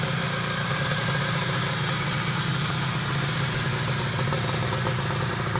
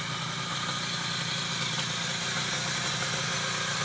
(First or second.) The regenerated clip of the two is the first